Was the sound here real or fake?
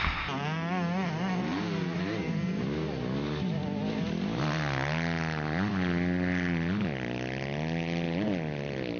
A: real